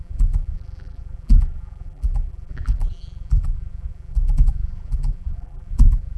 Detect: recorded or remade remade